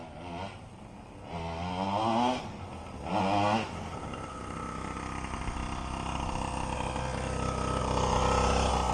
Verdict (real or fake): real